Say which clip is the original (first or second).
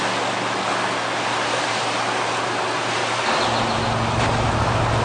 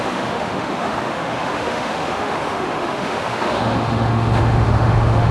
first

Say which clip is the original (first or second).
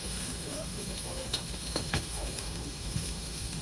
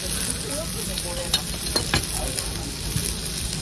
second